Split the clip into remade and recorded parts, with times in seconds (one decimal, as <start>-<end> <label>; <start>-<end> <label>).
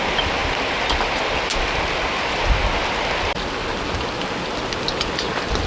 0.0-5.7 recorded